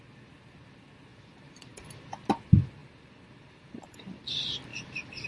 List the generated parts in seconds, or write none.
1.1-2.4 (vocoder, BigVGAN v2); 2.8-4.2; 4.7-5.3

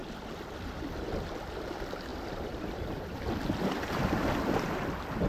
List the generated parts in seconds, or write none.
0.0-1.2 (vocoder, BigVGAN v2); 2.1-4.4